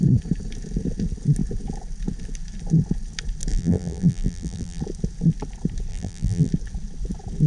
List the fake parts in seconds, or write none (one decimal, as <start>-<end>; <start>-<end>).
3.5-4.8; 5.9-6.5